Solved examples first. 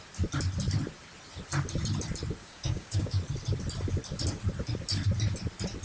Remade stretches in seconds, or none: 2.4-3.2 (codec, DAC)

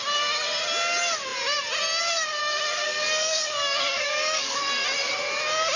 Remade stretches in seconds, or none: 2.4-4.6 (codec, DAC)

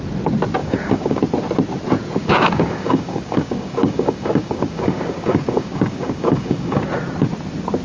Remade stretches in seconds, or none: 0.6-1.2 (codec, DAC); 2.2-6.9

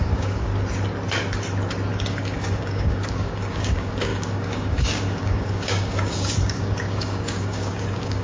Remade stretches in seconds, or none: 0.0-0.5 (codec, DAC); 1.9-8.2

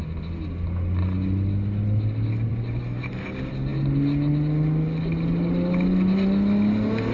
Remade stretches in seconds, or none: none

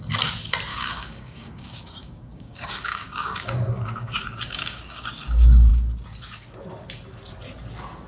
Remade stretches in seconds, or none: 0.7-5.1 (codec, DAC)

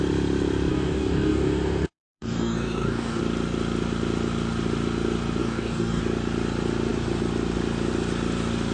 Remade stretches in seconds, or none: 0.7-3.2 (codec, DAC); 5.4-6.0